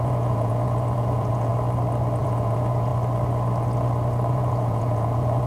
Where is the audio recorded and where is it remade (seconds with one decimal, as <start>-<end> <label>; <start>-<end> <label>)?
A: 0.0-1.5 remade; 1.5-2.2 recorded; 2.2-2.9 remade; 2.9-4.3 recorded; 4.3-5.5 remade

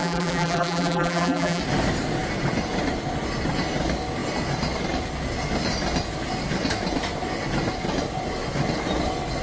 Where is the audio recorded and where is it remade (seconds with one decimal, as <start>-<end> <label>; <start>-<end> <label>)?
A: 0.0-1.6 remade; 1.6-9.4 recorded

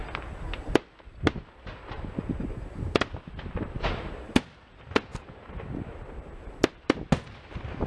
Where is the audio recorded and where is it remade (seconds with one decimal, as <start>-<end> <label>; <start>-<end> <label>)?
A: 0.0-7.9 recorded

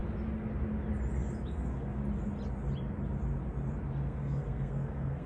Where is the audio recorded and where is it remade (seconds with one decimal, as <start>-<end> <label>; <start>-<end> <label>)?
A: 0.0-1.5 recorded; 1.5-2.0 remade; 2.0-4.0 recorded; 4.0-5.3 remade

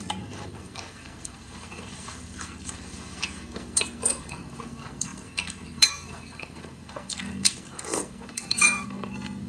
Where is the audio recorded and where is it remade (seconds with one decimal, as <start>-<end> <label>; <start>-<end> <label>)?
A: 0.0-9.5 remade

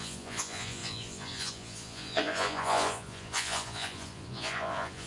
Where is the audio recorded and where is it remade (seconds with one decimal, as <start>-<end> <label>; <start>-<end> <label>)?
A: 0.0-5.1 remade

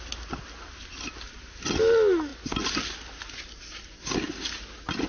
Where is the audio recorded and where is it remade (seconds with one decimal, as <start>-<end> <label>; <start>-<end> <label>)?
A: 0.0-5.1 recorded

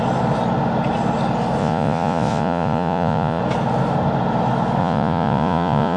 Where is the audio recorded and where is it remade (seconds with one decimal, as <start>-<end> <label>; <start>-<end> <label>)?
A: 0.0-1.6 recorded; 1.6-3.4 remade; 3.4-4.8 recorded; 4.8-6.0 remade